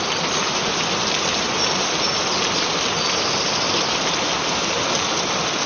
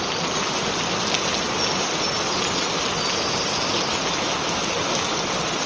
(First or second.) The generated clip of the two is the first